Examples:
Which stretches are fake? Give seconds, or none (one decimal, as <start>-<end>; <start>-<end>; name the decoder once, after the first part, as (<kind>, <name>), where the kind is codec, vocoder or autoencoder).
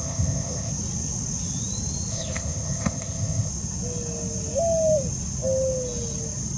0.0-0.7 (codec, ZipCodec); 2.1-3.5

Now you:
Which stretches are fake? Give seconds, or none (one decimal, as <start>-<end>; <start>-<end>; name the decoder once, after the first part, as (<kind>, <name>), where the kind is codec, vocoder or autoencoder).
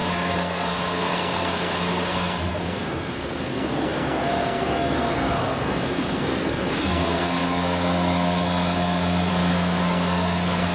0.0-10.7 (codec, SNAC)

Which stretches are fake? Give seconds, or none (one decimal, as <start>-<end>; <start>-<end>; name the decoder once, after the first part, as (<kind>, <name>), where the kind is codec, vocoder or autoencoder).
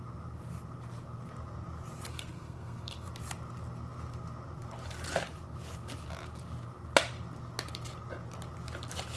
2.1-3.1 (codec, SNAC)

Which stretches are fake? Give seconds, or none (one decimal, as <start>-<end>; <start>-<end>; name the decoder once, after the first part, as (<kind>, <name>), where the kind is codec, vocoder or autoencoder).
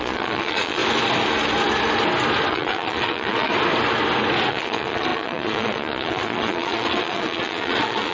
0.0-0.8 (vocoder, Vocos); 2.5-3.5; 4.5-8.1